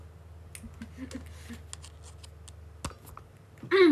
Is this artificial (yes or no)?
no